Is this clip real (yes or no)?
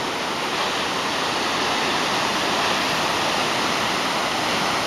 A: yes